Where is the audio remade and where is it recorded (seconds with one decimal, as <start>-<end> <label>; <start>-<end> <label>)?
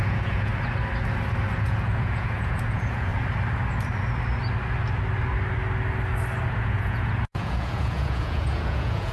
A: 0.0-0.5 remade; 0.5-1.6 recorded; 1.6-3.1 remade; 3.1-6.6 recorded; 6.6-9.1 remade